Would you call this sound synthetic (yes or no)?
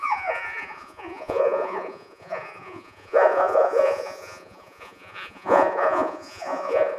yes